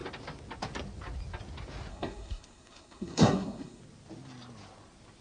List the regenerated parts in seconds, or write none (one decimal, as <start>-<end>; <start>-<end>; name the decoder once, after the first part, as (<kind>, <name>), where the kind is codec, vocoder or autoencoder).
1.9-3.8 (codec, SNAC)